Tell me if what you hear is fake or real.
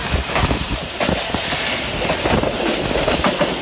real